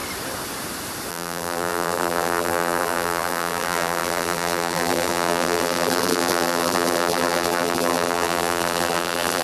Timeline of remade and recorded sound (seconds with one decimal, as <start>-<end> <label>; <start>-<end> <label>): 0.0-1.1 recorded; 1.1-9.4 remade